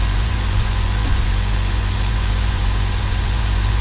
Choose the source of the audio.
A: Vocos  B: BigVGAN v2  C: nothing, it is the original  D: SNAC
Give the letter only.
A